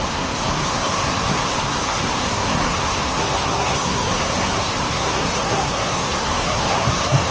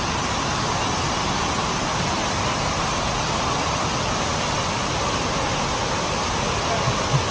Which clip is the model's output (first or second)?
first